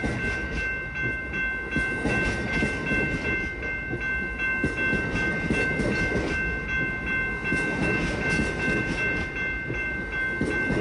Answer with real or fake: real